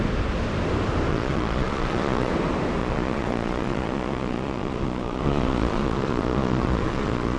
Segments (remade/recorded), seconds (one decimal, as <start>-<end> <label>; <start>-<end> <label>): 0.0-1.1 recorded; 1.1-2.3 remade; 2.3-2.8 recorded; 2.8-7.4 remade